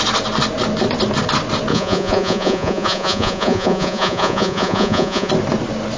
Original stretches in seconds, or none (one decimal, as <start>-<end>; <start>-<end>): 0.0-1.7; 5.3-6.0